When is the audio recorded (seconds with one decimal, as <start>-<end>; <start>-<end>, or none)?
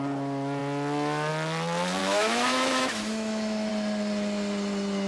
0.0-2.0; 3.7-5.1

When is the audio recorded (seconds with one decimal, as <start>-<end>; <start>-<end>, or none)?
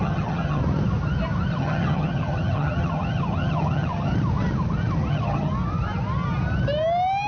0.6-1.5; 4.1-5.1; 5.5-7.3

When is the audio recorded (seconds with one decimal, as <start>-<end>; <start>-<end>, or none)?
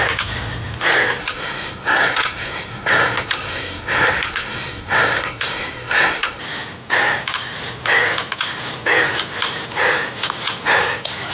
0.0-1.2; 6.4-11.3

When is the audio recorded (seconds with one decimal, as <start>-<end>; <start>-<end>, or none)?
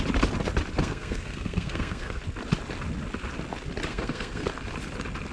0.0-0.8; 2.2-3.9; 4.5-5.3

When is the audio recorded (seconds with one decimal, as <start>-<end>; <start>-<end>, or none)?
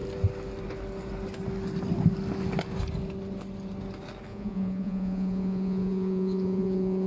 0.0-4.3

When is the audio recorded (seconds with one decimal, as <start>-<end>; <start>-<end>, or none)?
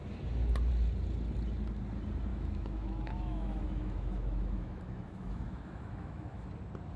0.0-2.3; 6.5-7.0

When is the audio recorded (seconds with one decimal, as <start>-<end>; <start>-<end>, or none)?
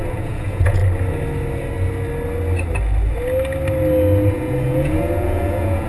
0.8-4.3